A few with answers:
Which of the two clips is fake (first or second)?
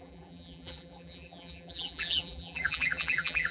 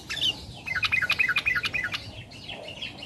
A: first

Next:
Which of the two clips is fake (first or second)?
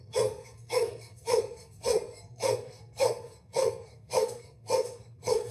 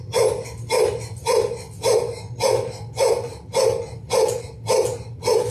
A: first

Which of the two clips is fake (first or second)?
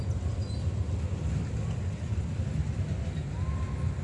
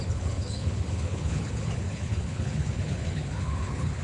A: second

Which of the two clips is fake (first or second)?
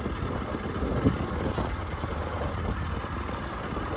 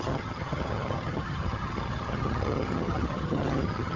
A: second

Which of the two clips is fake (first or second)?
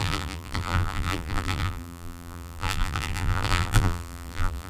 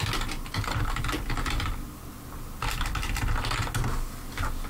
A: first